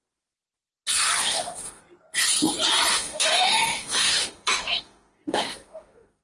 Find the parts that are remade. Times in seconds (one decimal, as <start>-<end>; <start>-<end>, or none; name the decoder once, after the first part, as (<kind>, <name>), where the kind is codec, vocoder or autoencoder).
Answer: 1.2-1.8 (autoencoder, DAC-VAE); 2.9-6.2